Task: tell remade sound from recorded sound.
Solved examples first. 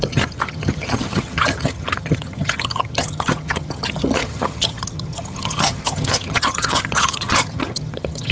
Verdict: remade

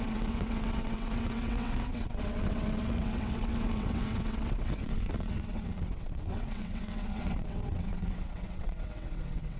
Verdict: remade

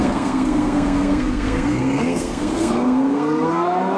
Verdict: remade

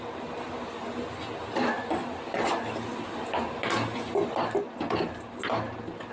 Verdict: recorded